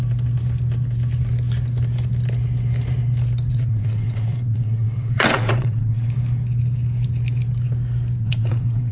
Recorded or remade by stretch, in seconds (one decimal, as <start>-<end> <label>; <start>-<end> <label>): 0.0-3.5 recorded; 3.5-6.1 remade; 6.1-8.2 recorded; 8.2-8.9 remade